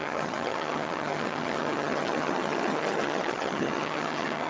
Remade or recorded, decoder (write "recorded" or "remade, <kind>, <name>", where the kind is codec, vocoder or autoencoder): remade, vocoder, HiFi-GAN